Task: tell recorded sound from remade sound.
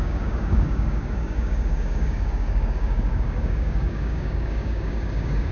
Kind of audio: remade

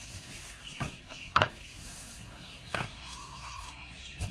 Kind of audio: remade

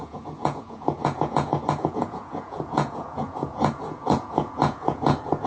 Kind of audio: remade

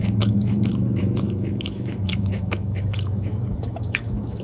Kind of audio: remade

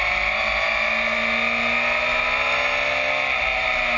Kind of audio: recorded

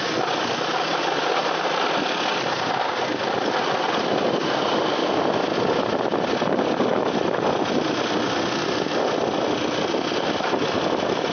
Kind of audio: recorded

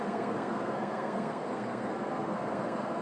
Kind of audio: remade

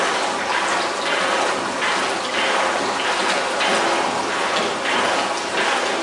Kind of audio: recorded